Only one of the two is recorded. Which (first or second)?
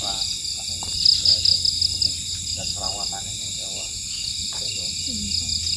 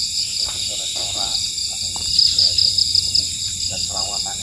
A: first